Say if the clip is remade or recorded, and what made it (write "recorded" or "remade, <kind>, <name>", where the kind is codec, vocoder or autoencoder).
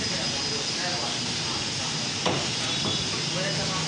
recorded